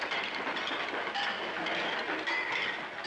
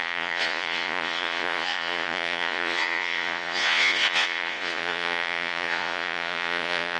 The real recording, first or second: first